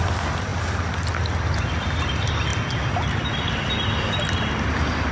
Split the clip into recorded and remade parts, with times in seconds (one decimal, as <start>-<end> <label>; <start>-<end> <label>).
0.0-5.1 recorded